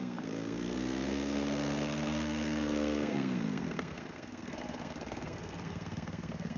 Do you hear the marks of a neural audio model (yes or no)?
yes